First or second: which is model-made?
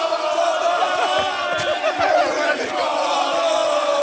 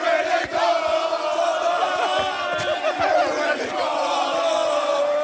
first